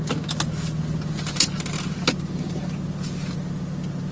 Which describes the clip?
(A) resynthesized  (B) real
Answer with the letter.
B